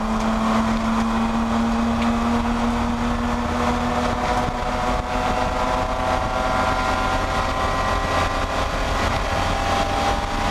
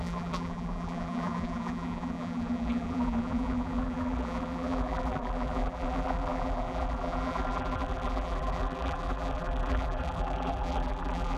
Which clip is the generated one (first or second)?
second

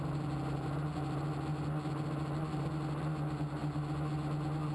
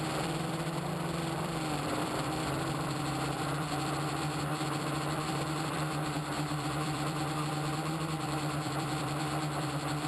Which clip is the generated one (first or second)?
second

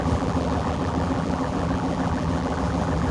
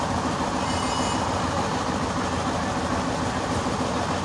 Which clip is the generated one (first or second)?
first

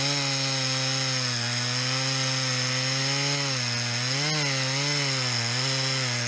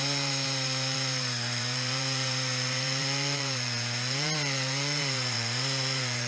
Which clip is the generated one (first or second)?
second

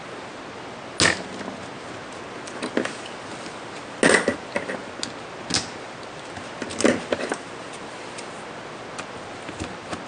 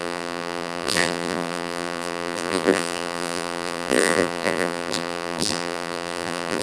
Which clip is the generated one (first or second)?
second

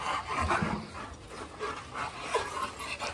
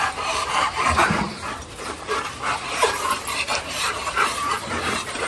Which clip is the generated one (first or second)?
second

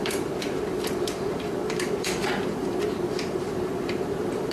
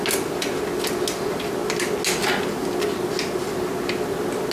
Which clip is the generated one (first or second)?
first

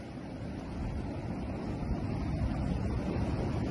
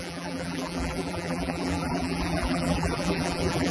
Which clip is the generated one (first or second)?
second